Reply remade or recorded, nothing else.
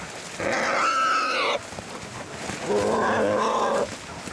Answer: recorded